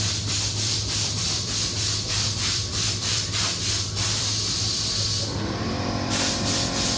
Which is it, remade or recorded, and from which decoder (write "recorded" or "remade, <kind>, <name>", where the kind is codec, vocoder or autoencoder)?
remade, vocoder, BigVGAN v2